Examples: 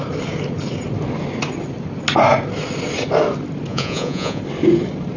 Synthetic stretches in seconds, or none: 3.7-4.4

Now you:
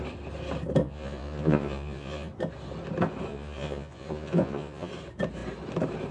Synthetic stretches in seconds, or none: 0.8-2.3; 3.3-4.9

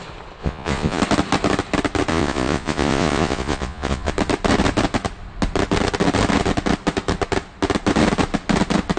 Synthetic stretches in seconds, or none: 0.4-1.0; 2.1-4.1